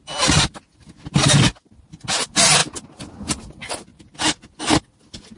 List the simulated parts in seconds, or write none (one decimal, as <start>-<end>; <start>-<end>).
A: none